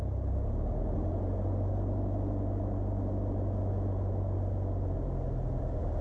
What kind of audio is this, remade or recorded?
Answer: recorded